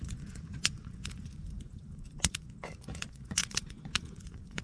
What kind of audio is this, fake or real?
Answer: fake